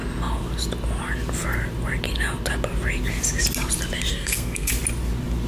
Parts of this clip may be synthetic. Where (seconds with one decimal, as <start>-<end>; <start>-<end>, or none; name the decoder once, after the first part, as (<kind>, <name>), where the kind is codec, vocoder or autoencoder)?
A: 4.1-4.7 (codec, SNAC)